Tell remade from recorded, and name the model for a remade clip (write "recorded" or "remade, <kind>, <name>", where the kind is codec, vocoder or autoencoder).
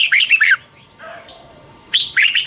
remade, vocoder, BigVGAN v2